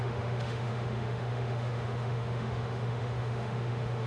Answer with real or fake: fake